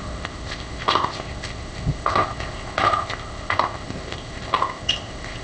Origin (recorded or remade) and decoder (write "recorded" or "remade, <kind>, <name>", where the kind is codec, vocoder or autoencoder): remade, codec, ZipCodec